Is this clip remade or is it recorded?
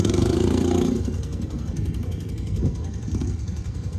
remade